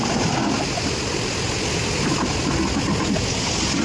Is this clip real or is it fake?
real